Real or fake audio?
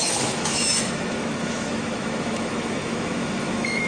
fake